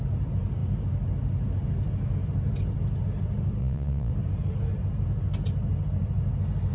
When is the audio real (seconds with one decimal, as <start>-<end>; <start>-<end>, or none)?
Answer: 0.0-3.6; 4.1-6.7

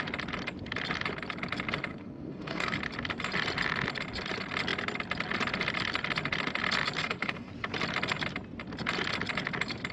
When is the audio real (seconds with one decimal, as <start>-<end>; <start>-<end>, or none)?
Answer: 0.0-1.9; 2.8-7.0; 7.5-9.9

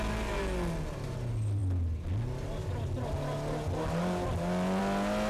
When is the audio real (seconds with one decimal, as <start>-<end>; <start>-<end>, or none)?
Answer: 0.0-5.3

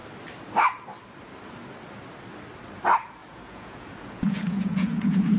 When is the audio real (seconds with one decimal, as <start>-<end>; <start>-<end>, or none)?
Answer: 0.0-3.2